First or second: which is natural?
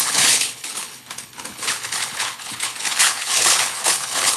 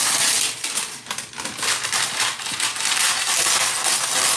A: second